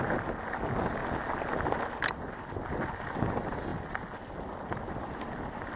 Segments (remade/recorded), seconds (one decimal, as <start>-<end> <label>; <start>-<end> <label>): 0.0-5.8 recorded